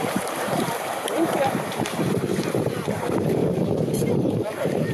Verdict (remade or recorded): remade